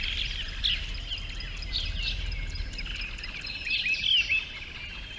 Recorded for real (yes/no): yes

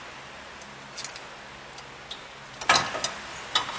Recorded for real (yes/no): yes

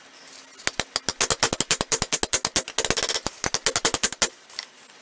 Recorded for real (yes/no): yes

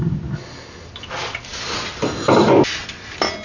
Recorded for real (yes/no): yes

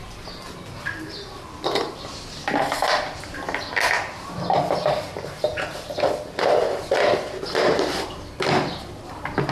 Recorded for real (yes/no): yes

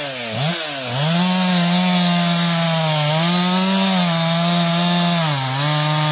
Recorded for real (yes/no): yes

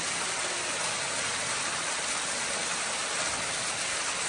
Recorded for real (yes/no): yes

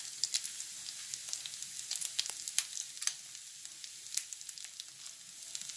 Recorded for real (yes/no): yes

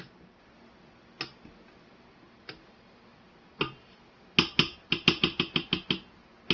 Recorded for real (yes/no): yes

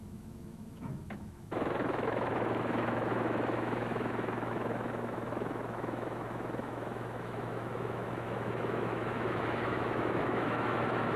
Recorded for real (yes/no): no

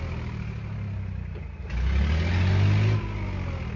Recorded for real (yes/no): yes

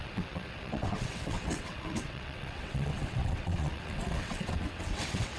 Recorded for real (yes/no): no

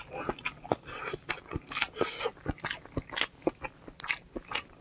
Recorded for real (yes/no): yes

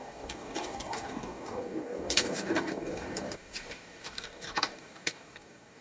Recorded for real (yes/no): no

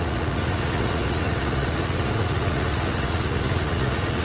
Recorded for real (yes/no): no